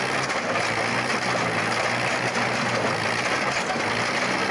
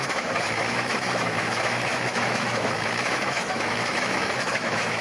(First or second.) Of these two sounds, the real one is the first